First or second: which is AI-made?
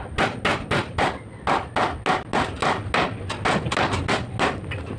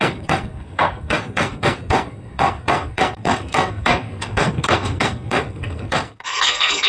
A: second